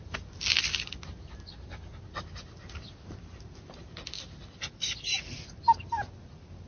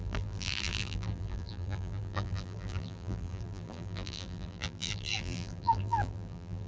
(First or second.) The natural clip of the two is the first